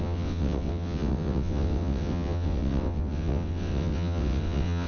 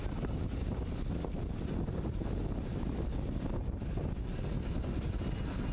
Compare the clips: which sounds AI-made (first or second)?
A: first